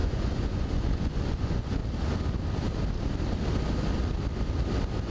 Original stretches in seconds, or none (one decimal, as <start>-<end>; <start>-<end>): 1.8-5.1